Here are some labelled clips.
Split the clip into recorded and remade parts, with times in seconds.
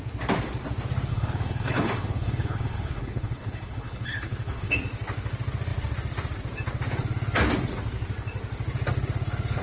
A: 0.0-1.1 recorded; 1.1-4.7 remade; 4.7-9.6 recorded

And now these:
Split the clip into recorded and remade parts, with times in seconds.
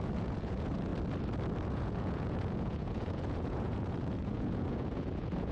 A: 0.0-0.9 remade; 0.9-1.6 recorded; 1.6-5.5 remade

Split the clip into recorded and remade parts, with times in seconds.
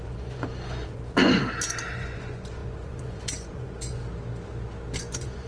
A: 0.0-1.4 remade; 1.4-1.9 recorded; 1.9-4.0 remade; 4.0-5.0 recorded; 5.0-5.5 remade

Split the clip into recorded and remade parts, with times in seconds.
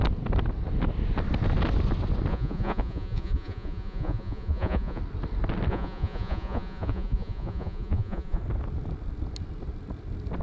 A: 0.0-2.3 recorded; 2.3-5.0 remade; 5.0-5.7 recorded; 5.7-8.4 remade; 8.4-10.4 recorded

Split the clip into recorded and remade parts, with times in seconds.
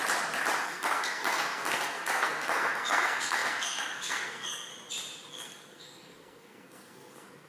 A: 0.0-0.6 recorded; 0.6-4.7 remade; 4.7-5.3 recorded; 5.3-7.5 remade